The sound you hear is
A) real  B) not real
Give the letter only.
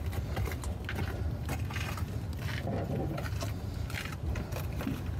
A